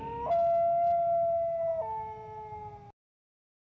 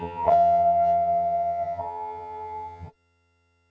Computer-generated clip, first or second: second